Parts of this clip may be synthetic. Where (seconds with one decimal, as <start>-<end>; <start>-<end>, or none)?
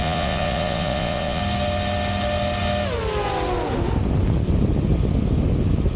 0.0-1.4